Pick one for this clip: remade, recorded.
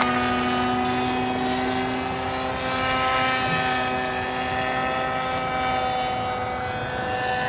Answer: recorded